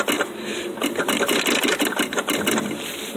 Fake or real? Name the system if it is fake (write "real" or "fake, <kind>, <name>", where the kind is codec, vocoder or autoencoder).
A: real